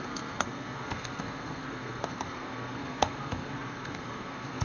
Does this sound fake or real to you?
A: fake